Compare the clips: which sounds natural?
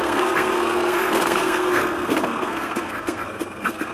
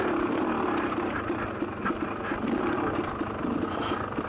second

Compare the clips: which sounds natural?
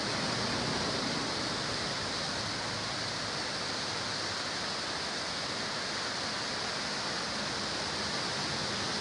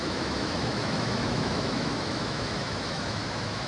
first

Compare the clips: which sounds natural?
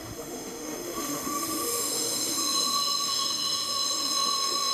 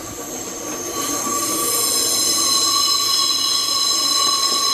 second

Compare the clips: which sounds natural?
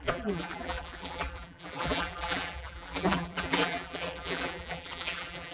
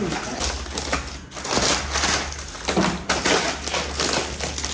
second